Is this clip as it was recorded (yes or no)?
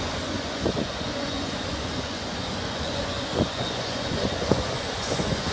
no